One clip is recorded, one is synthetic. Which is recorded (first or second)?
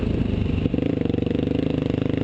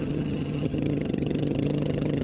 first